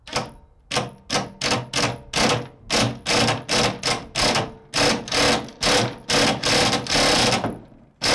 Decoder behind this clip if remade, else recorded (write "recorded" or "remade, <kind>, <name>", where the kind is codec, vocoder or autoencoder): recorded